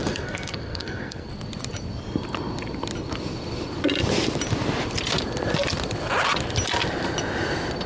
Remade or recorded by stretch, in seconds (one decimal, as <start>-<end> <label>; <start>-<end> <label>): 0.0-1.3 remade; 1.3-7.9 recorded